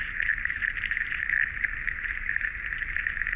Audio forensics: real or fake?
real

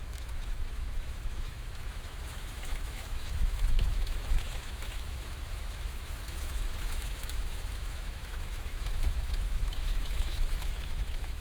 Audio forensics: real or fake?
fake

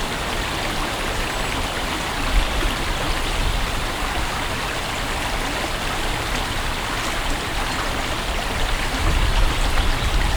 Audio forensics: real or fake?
real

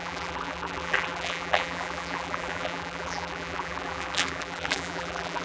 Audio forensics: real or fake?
fake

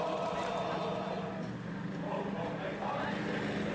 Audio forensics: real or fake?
real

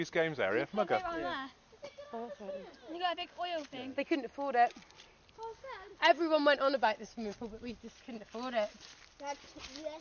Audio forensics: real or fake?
real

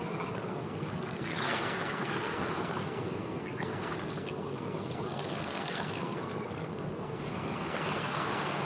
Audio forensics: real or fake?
fake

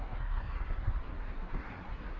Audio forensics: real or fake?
fake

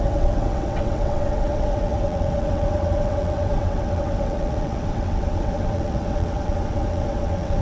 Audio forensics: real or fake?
fake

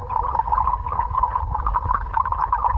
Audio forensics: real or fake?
fake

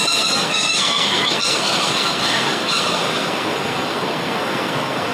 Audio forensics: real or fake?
fake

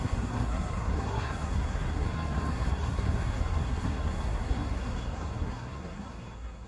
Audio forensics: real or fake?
fake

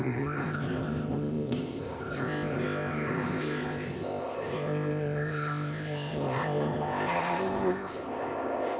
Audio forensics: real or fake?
fake